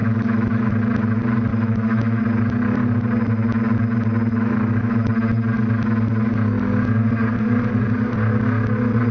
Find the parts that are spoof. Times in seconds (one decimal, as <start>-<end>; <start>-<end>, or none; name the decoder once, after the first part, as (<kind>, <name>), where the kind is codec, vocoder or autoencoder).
0.0-0.7 (autoencoder, DAC-VAE); 1.5-2.2; 4.3-5.1